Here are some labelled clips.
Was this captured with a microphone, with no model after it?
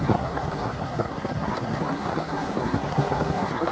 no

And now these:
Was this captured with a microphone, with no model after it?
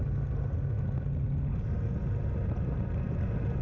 yes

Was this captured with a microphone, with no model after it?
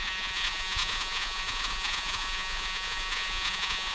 no